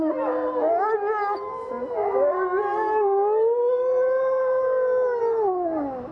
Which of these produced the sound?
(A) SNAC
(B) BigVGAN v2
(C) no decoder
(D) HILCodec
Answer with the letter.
C